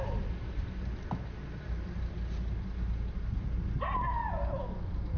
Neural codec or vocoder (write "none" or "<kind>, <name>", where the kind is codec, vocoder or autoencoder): none